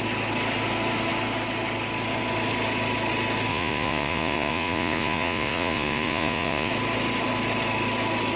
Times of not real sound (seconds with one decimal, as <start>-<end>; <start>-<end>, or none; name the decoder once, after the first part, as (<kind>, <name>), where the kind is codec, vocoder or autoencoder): 3.5-6.7 (vocoder, Vocos)